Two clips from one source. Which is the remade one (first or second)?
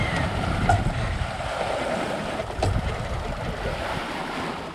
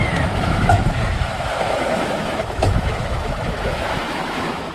second